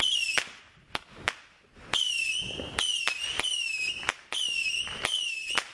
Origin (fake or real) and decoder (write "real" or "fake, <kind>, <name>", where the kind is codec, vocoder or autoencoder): real